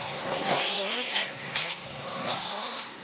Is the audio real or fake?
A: fake